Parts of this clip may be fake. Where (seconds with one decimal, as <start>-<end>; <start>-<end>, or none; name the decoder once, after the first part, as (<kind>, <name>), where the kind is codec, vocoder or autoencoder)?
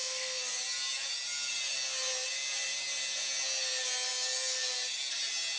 0.0-0.5 (codec, SNAC)